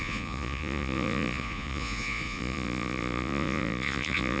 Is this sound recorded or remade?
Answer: remade